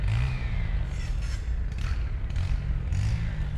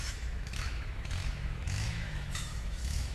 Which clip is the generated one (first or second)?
second